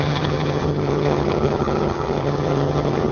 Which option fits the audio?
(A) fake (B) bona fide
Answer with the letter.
A